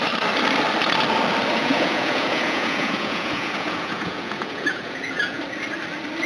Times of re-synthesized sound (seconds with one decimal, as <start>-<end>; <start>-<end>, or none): 1.6-5.4